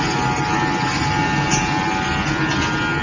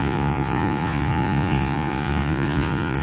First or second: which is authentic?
first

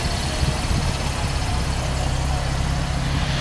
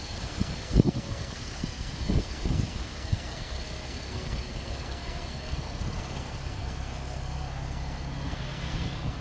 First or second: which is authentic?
first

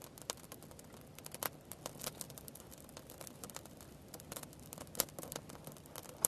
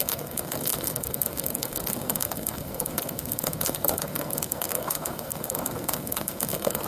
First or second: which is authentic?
first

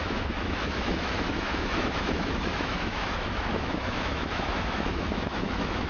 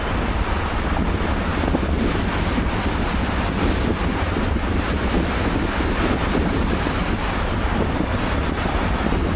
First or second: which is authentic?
second